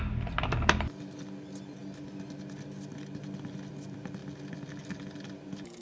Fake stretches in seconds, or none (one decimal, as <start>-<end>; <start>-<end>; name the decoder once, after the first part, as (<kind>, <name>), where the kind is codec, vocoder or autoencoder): none